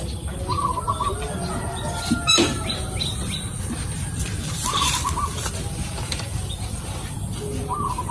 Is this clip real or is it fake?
real